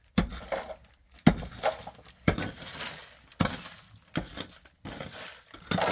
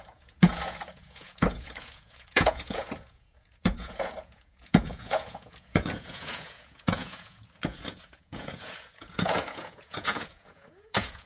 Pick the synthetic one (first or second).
second